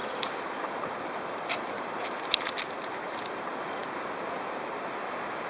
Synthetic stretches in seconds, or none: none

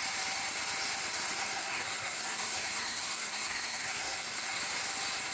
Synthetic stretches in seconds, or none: 1.4-4.6 (codec, SNAC)

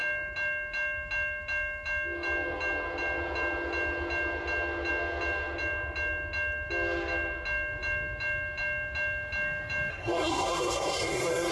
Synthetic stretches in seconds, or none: 9.9-11.5 (codec, SNAC)

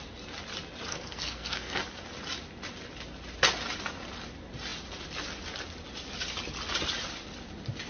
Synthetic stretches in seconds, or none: 0.9-1.8 (codec, SNAC)

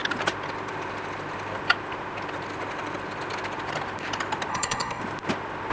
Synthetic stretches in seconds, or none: 4.5-5.0 (codec, SNAC)